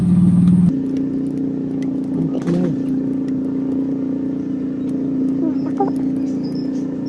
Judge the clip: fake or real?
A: real